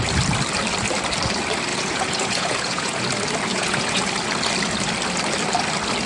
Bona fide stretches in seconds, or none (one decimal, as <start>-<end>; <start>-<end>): 0.0-1.7; 3.0-3.5; 4.0-6.1